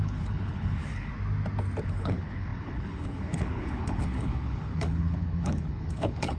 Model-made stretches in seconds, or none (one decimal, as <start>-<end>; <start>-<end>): 0.0-1.1; 1.8-6.4